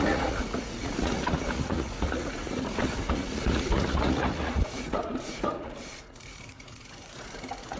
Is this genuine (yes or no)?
no